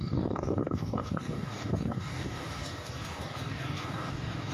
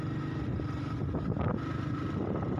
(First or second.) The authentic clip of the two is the second